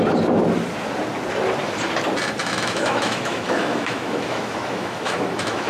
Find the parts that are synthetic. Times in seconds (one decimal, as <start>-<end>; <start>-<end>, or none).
2.4-5.7